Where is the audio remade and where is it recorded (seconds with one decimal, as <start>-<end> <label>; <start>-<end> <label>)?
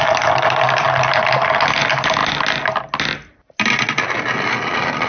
0.0-5.1 recorded